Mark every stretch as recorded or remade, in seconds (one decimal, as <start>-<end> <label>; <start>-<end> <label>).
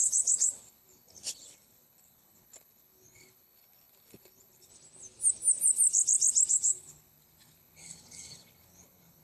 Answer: 0.0-4.7 remade; 4.7-6.5 recorded; 6.5-9.2 remade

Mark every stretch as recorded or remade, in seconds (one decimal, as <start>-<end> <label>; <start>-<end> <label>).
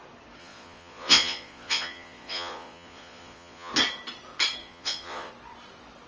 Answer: 0.0-0.4 recorded; 0.4-3.7 remade; 3.7-4.6 recorded; 4.6-5.3 remade; 5.3-6.1 recorded